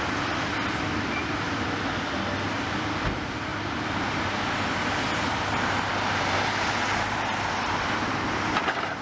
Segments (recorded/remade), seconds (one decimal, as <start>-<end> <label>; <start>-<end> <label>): 0.0-9.0 recorded